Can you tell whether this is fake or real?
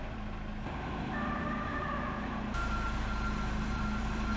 fake